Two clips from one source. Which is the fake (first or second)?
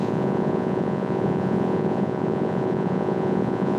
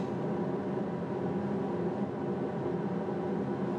first